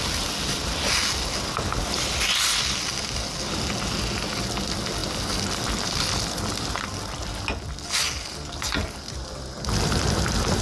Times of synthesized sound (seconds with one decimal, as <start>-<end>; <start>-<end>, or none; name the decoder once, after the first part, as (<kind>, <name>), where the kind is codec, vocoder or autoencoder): none

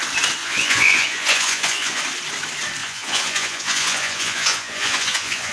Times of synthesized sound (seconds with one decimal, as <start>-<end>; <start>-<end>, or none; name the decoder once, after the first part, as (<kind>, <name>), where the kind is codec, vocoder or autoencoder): 0.4-2.0 (vocoder, Vocos); 2.8-5.5

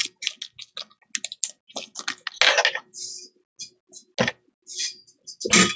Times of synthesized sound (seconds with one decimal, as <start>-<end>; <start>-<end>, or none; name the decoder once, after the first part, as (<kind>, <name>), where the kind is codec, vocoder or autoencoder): none

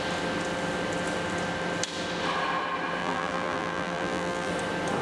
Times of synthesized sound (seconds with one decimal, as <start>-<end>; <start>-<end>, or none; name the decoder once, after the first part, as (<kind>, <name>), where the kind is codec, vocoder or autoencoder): 3.0-4.5 (vocoder, BigVGAN v2)

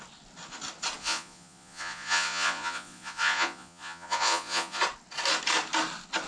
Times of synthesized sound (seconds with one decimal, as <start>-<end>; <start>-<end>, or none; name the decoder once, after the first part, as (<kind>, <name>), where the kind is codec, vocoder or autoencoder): 1.0-4.8 (vocoder, Vocos)

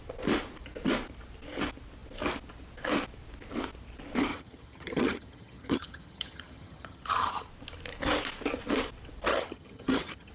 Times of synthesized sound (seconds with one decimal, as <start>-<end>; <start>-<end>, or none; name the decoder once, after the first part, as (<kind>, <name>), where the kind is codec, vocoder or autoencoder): 4.3-7.5 (vocoder, HiFi-GAN); 9.3-10.3

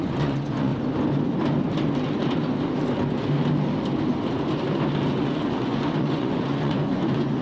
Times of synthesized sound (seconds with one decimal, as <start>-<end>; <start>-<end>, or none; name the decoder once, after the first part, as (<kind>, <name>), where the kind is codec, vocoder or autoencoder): 0.0-0.7 (vocoder, Vocos); 5.1-7.4